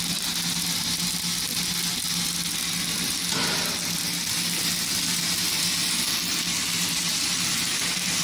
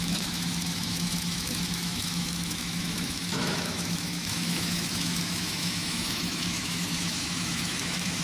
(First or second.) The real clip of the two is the first